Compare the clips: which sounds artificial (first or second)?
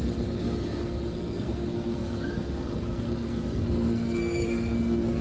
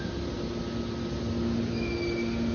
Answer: first